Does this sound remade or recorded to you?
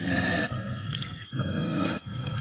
remade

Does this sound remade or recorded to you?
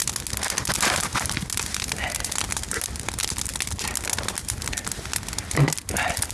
recorded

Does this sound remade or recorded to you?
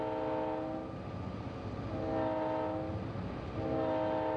recorded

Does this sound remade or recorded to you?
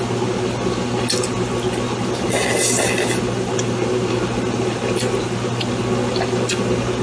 recorded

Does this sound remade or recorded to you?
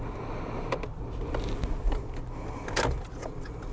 recorded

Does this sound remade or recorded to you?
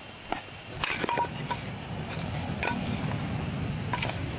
recorded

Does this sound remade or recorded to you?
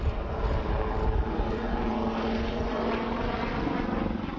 recorded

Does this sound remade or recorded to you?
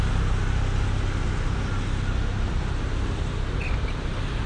recorded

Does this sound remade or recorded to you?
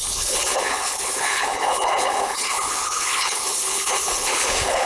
remade